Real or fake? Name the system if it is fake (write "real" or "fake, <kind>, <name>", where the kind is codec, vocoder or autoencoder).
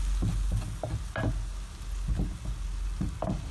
real